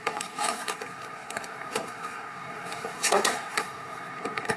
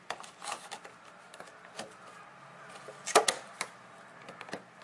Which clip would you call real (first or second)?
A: second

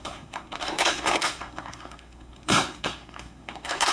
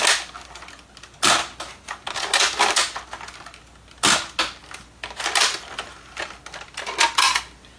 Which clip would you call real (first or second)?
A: second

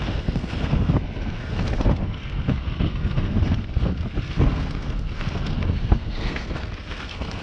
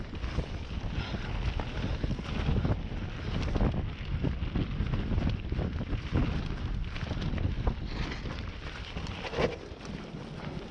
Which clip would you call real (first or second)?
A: second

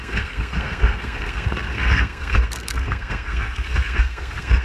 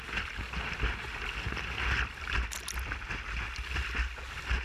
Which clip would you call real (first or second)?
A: second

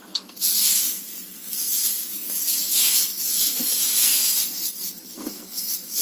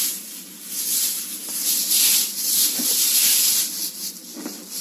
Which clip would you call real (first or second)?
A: second